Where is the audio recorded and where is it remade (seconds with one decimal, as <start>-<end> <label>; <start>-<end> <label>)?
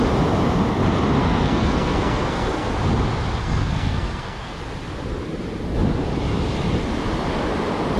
0.0-1.2 recorded; 1.2-2.7 remade; 2.7-3.4 recorded; 3.4-4.6 remade; 4.6-8.0 recorded